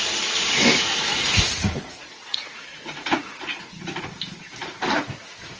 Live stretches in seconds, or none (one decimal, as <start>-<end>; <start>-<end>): 0.0-1.1; 3.8-5.6

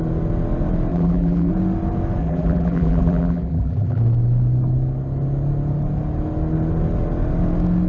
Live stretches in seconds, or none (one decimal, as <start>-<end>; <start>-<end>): 0.0-0.9; 1.5-2.2; 4.0-7.9

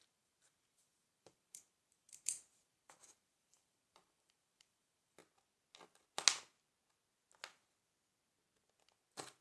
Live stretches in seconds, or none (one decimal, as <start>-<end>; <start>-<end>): 5.2-9.4